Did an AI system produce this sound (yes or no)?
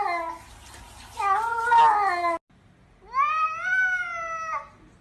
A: no